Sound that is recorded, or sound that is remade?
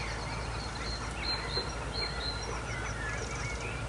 recorded